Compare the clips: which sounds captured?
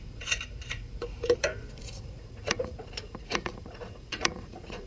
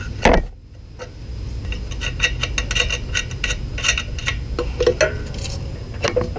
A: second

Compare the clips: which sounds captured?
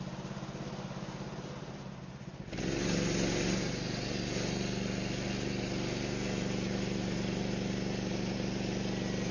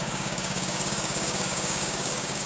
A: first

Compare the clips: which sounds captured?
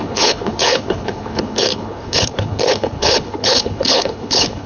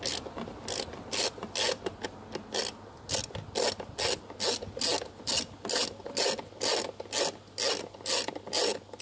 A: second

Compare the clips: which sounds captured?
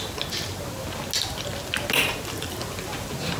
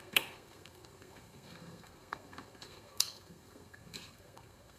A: first